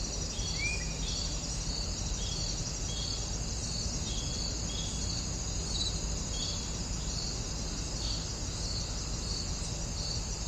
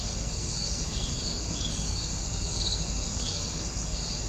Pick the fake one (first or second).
second